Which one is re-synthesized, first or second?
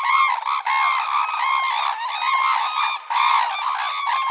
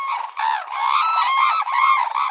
second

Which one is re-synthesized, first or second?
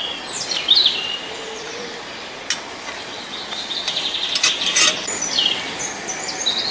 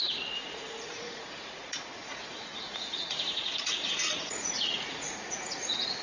second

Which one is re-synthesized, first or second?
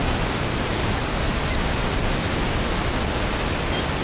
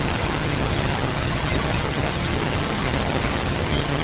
second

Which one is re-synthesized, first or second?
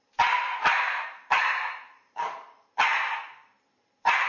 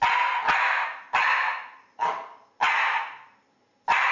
first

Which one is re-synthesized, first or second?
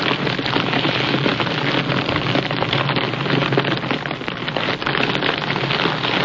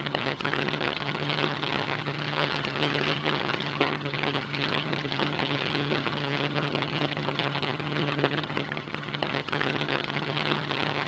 second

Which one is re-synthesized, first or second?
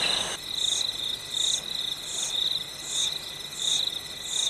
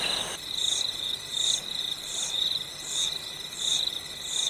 second